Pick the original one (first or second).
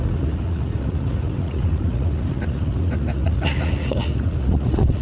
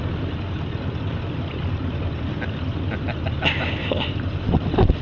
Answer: second